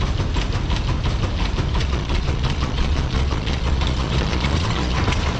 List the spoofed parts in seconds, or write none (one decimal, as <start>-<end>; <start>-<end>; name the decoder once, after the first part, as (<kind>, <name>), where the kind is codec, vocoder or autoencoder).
1.8-5.0 (vocoder, Vocos)